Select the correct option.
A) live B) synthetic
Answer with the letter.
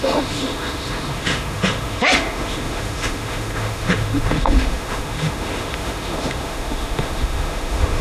B